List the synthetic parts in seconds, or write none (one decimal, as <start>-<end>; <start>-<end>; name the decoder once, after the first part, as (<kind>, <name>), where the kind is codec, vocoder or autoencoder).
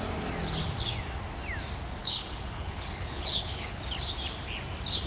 2.0-3.8 (codec, HILCodec)